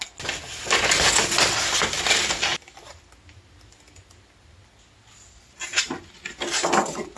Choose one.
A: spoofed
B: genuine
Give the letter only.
B